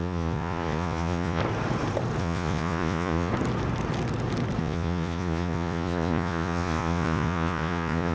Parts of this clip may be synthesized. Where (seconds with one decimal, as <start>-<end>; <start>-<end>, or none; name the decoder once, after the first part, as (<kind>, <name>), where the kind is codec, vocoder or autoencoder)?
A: 0.0-1.4 (vocoder, Vocos); 2.2-3.3; 4.6-8.1